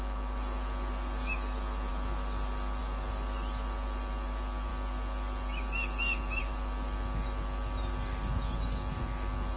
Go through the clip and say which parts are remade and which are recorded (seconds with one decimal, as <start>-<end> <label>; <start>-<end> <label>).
0.0-9.6 recorded